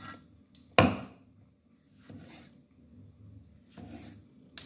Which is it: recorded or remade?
recorded